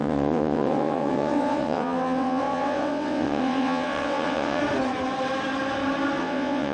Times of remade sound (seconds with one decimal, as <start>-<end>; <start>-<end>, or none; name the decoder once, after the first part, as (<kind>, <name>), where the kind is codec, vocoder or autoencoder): 0.0-4.6 (vocoder, WaveNeXt); 6.2-6.7